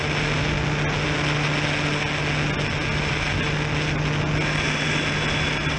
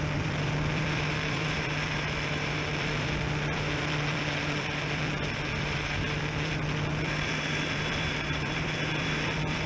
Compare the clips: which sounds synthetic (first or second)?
second